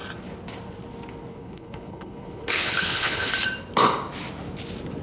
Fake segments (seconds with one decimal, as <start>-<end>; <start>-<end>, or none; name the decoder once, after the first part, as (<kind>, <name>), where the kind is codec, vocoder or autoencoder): 1.3-3.3 (codec, HILCodec)